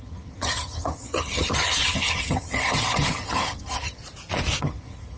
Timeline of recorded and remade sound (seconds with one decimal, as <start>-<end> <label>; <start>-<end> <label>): 0.0-4.0 remade; 4.0-4.6 recorded; 4.6-5.2 remade

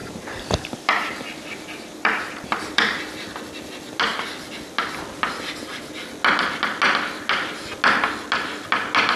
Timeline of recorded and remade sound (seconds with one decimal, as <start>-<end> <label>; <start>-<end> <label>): 0.0-3.0 remade; 3.0-9.2 recorded

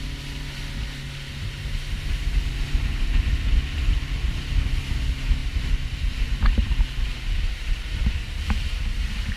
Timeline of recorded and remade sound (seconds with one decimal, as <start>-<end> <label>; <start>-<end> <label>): 0.0-1.3 recorded; 1.3-4.3 remade; 4.3-5.4 recorded; 5.4-9.4 remade

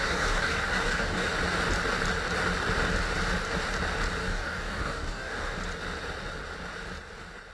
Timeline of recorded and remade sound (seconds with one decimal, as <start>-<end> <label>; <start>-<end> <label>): 0.0-1.3 remade; 1.3-4.2 recorded; 4.2-5.6 remade; 5.6-7.5 recorded

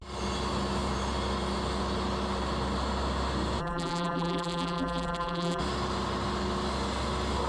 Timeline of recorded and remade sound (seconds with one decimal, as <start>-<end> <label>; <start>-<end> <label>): 0.0-3.6 recorded; 3.6-5.6 remade; 5.6-7.5 recorded

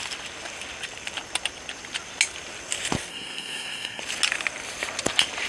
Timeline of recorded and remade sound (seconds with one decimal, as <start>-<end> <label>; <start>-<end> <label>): 0.0-3.1 recorded; 3.1-4.0 remade; 4.0-5.5 recorded

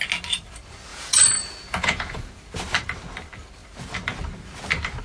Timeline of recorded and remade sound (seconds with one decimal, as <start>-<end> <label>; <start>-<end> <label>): 0.0-0.9 recorded; 0.9-2.4 remade; 2.4-5.0 recorded